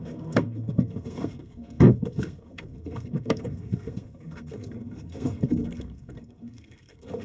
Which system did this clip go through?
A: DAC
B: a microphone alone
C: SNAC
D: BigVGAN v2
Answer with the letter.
C